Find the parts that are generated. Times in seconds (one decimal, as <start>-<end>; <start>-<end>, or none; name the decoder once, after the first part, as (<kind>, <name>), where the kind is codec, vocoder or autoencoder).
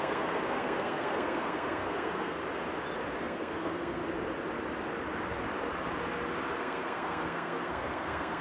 0.0-2.4 (codec, SNAC); 3.2-4.0; 6.6-8.4